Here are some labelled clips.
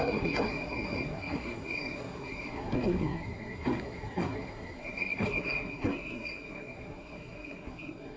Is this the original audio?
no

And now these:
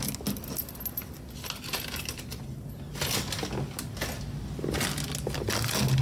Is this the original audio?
yes